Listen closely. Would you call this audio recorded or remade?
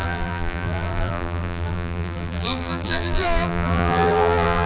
remade